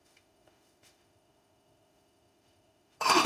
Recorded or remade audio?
remade